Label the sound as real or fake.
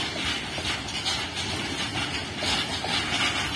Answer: real